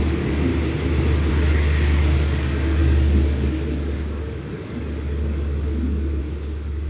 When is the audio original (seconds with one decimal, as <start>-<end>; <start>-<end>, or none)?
0.5-1.3